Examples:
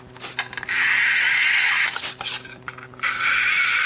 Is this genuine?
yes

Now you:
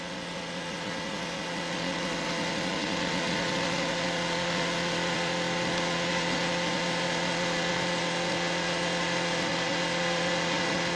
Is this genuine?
no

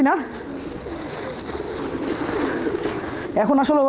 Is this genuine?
yes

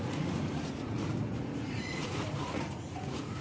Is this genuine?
no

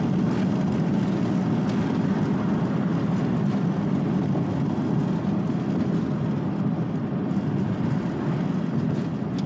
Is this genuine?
yes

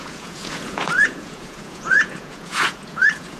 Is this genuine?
no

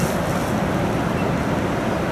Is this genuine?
yes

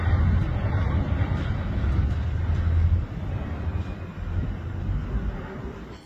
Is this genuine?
yes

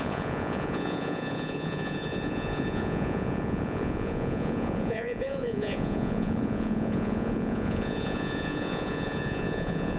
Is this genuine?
no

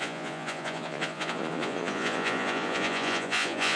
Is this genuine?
no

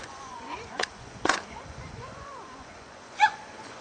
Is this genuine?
no